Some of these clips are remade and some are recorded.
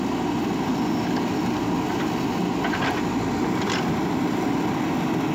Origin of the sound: recorded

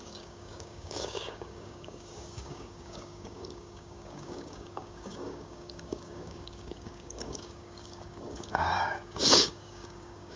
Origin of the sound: remade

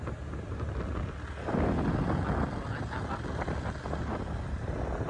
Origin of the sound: recorded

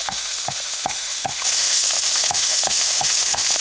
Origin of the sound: remade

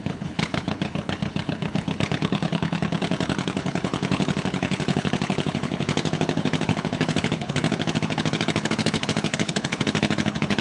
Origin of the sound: remade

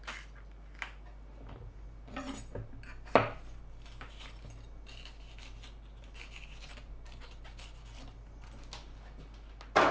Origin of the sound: recorded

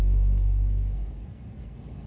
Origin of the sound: remade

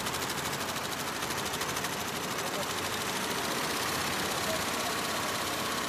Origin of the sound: recorded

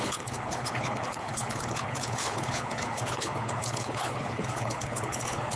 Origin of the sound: remade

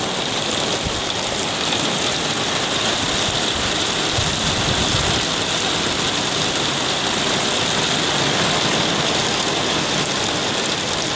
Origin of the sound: recorded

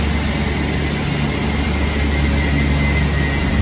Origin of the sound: recorded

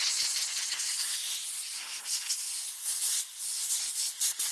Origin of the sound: recorded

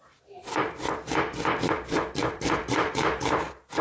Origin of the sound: recorded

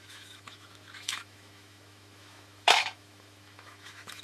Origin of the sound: remade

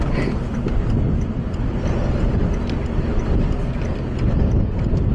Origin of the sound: recorded